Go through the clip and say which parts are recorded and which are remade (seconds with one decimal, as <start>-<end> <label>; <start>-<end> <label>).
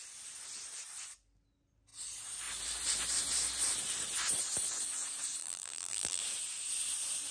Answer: 0.0-5.4 recorded; 5.4-6.2 remade; 6.2-7.3 recorded